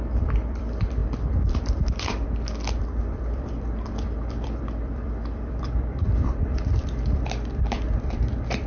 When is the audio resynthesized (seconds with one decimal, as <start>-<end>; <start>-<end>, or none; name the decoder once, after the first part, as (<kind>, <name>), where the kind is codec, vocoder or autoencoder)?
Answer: 0.0-1.0 (vocoder, BigVGAN v2); 2.8-8.7